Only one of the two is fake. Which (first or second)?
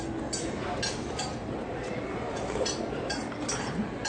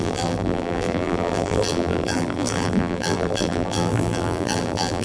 second